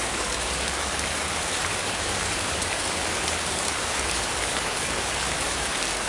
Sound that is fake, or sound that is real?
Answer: fake